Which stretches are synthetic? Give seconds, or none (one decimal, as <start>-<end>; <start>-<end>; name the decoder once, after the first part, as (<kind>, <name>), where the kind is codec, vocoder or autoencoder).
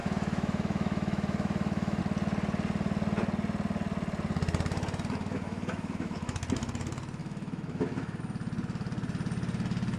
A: 0.0-2.0 (autoencoder, DAC-VAE); 5.2-6.4; 7.2-8.2